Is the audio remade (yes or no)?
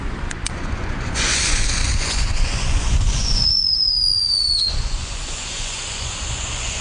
yes